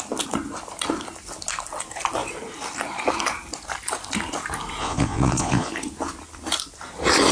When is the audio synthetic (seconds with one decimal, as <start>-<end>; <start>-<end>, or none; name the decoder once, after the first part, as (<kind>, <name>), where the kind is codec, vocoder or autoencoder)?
4.8-5.7 (vocoder, Vocos)